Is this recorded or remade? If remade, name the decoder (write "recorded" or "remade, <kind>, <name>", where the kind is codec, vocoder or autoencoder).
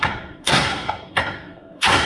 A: remade, codec, SNAC